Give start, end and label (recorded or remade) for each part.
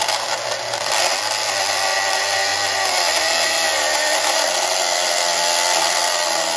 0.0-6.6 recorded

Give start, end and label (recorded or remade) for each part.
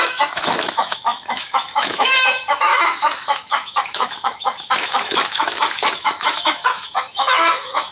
0.0-7.9 remade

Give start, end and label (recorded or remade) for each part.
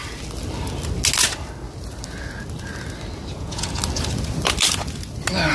0.0-3.3 recorded; 3.3-3.8 remade; 3.8-5.5 recorded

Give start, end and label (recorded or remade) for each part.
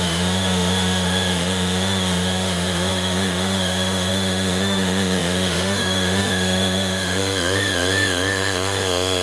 0.0-9.2 remade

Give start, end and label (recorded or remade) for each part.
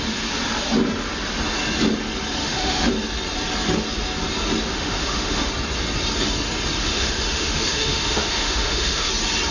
0.0-2.4 recorded; 2.4-2.9 remade; 2.9-4.7 recorded; 4.7-5.5 remade; 5.5-6.8 recorded; 6.8-9.1 remade; 9.1-9.5 recorded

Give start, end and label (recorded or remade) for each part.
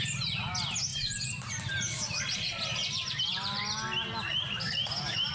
0.0-0.9 recorded; 0.9-1.5 remade; 1.5-2.8 recorded; 2.8-3.6 remade; 3.6-4.3 recorded; 4.3-5.3 remade